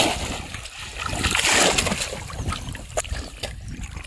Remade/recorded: recorded